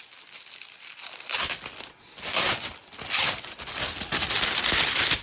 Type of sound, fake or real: real